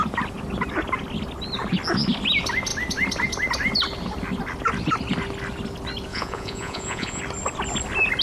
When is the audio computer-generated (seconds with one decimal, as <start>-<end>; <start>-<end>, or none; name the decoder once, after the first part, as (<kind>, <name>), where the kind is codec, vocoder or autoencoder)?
6.1-7.2 (vocoder, Vocos)